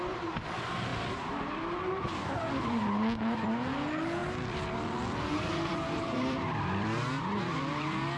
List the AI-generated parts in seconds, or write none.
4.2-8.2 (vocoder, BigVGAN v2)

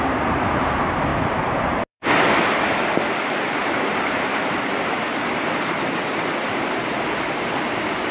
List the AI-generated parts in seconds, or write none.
1.1-2.0 (vocoder, BigVGAN v2); 3.6-4.5; 6.4-7.0

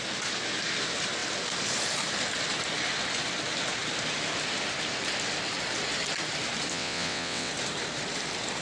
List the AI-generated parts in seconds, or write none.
6.7-7.5 (vocoder, WaveNeXt)

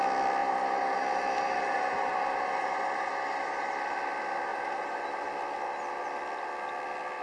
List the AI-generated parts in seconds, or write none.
0.4-3.1 (vocoder, BigVGAN v2); 4.5-5.0

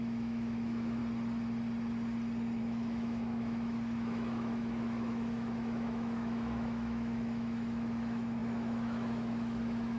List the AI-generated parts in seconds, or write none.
0.0-1.0 (autoencoder, DAC-VAE); 2.6-10.0

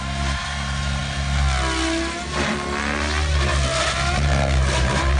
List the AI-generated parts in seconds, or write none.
0.0-1.0 (vocoder, BigVGAN v2); 4.1-5.2